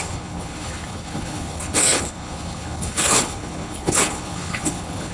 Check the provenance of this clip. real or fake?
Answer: fake